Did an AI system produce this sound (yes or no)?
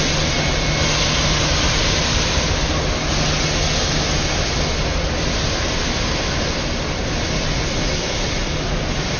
no